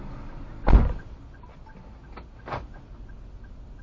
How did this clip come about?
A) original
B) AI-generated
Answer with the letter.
A